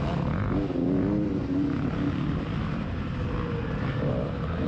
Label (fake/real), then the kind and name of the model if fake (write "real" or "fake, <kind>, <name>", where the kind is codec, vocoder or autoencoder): real